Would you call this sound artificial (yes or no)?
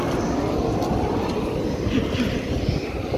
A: no